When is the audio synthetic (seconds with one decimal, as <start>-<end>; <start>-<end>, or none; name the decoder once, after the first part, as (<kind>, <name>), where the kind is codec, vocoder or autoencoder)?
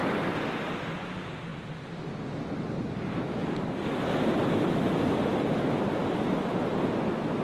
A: none